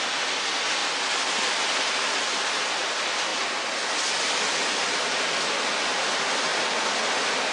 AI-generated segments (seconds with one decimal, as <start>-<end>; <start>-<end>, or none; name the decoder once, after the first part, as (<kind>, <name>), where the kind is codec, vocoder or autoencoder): none

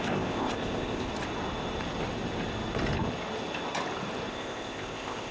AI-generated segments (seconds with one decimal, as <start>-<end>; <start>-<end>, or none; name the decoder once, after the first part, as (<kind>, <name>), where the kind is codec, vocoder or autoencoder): 0.0-1.1 (codec, ZipCodec); 4.3-5.3

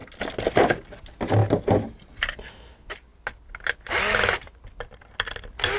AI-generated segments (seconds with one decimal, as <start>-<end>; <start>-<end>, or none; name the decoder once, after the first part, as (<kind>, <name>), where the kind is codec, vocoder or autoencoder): none

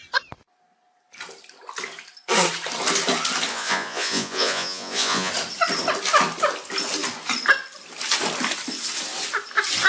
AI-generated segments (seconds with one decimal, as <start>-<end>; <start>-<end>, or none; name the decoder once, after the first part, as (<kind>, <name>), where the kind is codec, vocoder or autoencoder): 3.5-5.3 (vocoder, Vocos)

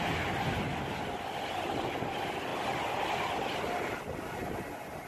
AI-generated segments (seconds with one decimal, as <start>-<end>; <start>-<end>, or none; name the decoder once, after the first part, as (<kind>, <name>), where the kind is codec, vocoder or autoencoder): none

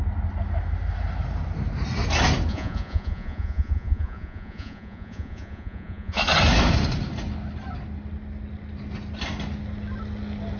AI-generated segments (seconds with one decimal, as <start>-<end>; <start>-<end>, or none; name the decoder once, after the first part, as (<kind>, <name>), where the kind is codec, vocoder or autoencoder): 2.5-6.2 (vocoder, Vocos)

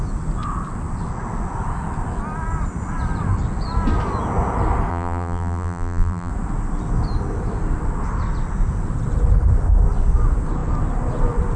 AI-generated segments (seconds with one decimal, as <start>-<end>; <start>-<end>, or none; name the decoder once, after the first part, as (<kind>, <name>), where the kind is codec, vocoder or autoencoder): 4.9-6.3 (vocoder, BigVGAN v2)

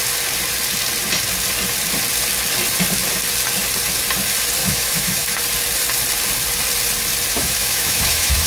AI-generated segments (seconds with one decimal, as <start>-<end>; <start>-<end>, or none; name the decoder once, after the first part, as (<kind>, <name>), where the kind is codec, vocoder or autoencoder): 4.6-5.4 (autoencoder, DAC-VAE); 7.3-8.5